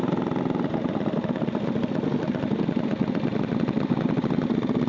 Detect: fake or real real